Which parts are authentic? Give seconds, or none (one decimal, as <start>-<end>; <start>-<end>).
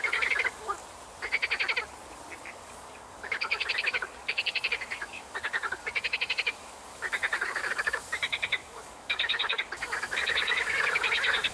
0.8-2.4